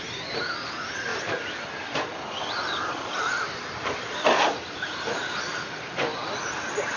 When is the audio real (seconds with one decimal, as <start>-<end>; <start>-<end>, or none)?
0.0-1.1; 5.3-6.2